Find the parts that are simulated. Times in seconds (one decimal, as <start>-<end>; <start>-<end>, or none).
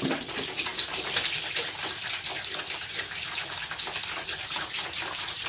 none